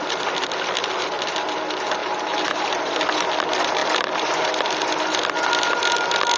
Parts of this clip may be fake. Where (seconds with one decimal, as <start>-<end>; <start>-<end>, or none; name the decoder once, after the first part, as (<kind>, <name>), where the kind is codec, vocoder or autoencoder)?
2.0-3.0 (vocoder, BigVGAN v2)